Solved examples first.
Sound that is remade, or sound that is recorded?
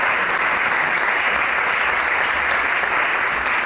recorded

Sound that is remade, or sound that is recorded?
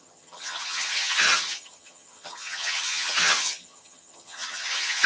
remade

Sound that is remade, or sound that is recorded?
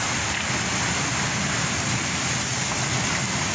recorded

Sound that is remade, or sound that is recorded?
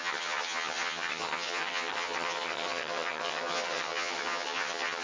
remade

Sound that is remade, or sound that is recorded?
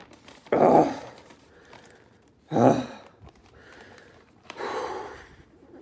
remade